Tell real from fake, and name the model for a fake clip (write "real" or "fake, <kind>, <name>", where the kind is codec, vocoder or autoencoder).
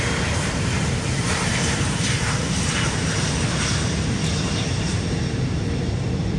fake, vocoder, BigVGAN v2